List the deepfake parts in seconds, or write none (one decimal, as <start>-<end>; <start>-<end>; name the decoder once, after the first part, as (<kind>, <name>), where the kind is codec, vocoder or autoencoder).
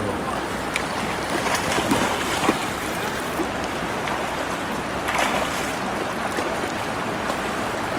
none